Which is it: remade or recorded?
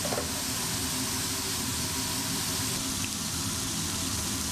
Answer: recorded